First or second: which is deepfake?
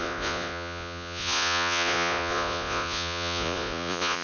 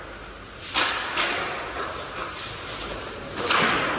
first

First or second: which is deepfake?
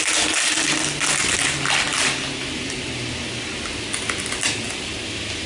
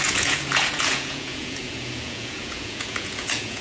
second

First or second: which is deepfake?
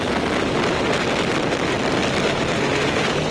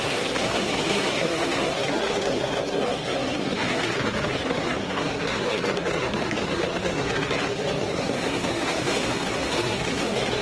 second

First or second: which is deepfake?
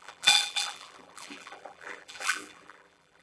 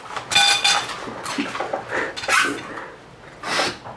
first